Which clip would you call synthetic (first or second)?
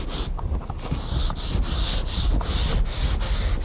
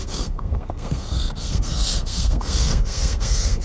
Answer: second